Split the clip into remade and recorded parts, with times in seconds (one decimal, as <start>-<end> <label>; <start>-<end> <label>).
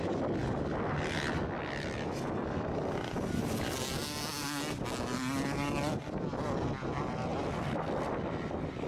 0.0-8.9 recorded